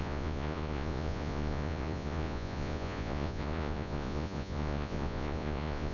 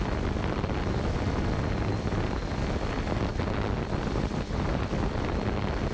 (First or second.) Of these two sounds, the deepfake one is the first